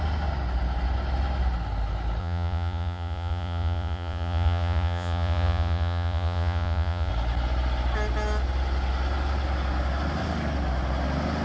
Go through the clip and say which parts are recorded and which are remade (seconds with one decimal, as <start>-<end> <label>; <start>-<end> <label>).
0.0-2.2 recorded; 2.2-7.1 remade; 7.1-11.4 recorded